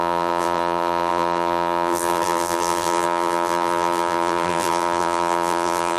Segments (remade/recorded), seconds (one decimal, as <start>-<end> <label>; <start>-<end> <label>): 0.0-6.0 remade